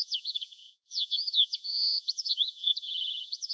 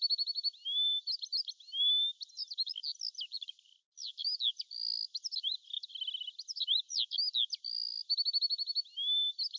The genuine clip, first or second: second